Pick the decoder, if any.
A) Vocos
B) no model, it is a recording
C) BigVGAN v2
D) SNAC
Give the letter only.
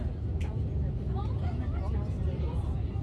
B